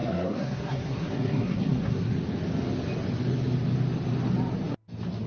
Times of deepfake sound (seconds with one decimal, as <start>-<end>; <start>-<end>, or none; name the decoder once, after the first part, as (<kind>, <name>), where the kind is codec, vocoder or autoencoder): 0.0-2.1 (codec, SNAC)